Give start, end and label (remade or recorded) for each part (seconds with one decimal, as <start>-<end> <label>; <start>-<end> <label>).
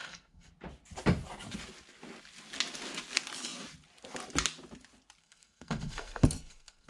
0.0-0.5 remade; 0.5-5.2 recorded; 5.2-6.9 remade